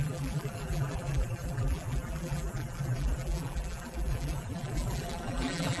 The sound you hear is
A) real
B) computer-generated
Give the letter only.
B